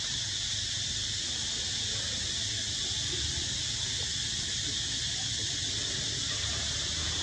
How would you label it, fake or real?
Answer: real